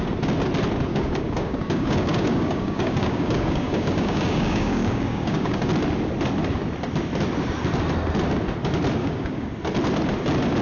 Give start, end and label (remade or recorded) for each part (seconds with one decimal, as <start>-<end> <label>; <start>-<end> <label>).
0.0-0.9 recorded; 0.9-5.7 remade; 5.7-9.0 recorded; 9.0-9.5 remade; 9.5-10.6 recorded